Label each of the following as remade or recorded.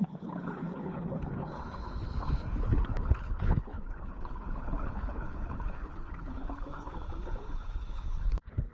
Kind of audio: remade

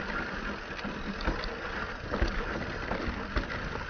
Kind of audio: recorded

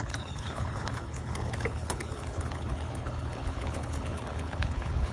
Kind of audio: remade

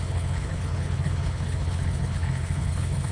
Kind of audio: remade